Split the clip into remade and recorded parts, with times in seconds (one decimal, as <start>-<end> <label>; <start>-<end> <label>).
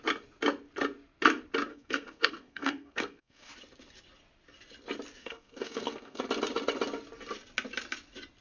0.0-1.7 recorded; 1.7-3.5 remade; 3.5-5.2 recorded; 5.2-6.2 remade; 6.2-8.4 recorded